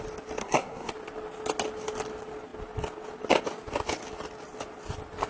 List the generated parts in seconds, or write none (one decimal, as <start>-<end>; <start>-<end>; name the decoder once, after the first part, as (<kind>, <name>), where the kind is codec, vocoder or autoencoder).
0.4-0.9 (codec, SNAC)